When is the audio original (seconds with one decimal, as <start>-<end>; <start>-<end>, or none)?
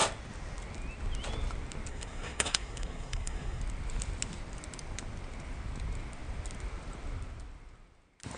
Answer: 0.0-1.9; 3.6-8.4